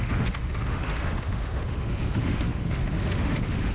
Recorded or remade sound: remade